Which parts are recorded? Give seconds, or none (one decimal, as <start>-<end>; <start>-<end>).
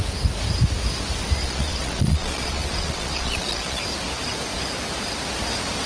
0.0-1.4; 3.8-5.9